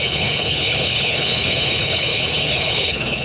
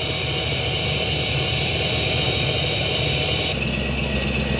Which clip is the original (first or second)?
second